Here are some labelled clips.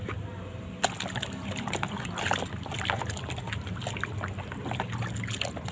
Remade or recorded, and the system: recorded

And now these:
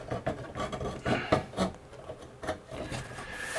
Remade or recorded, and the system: recorded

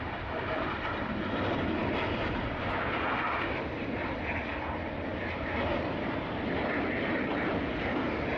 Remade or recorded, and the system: recorded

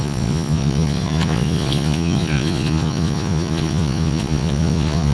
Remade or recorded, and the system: remade, vocoder, Vocos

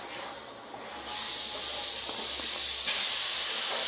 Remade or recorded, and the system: recorded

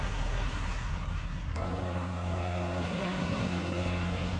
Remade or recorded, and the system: remade, codec, SNAC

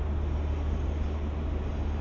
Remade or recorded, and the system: recorded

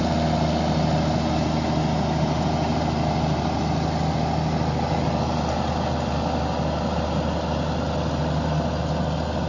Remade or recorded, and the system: recorded